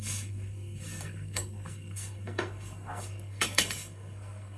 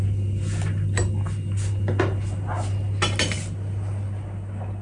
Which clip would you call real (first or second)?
second